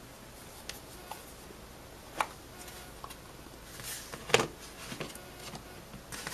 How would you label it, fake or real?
real